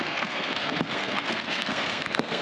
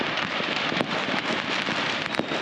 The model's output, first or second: first